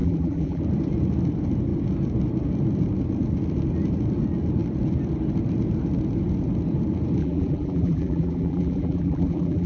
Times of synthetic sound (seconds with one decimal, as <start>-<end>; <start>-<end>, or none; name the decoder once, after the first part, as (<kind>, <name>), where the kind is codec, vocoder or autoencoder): 0.0-0.6 (vocoder, BigVGAN v2); 7.2-9.7